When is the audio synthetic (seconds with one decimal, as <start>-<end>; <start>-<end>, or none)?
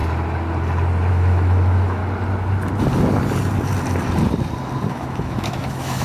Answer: 1.1-2.0; 4.9-6.0